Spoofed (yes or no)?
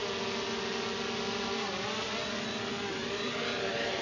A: no